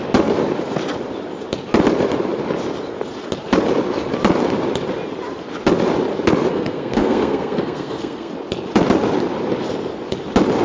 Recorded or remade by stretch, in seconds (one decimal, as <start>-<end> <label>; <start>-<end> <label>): 0.0-6.5 recorded; 6.5-8.3 remade; 8.3-10.6 recorded